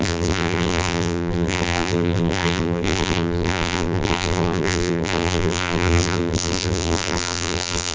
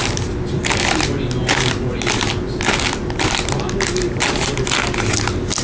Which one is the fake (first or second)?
first